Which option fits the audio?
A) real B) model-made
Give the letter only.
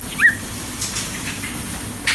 A